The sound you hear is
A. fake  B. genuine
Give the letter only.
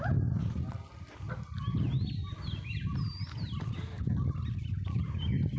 B